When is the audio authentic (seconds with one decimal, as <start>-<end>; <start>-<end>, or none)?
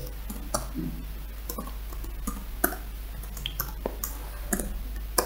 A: 0.0-5.3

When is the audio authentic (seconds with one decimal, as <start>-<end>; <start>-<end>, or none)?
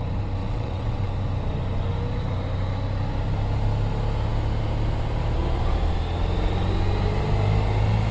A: 0.0-0.4; 1.1-8.1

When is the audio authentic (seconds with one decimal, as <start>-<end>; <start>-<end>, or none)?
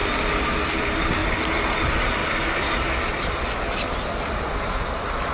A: 0.0-0.7; 1.2-1.8; 2.2-4.4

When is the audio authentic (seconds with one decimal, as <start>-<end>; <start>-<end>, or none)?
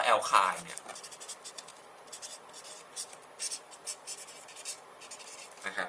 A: 0.0-5.9